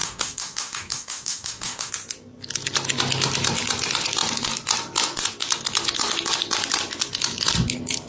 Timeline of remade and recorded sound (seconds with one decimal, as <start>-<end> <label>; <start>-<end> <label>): 0.0-1.9 remade; 1.9-8.1 recorded